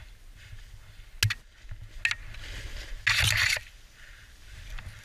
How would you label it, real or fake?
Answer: real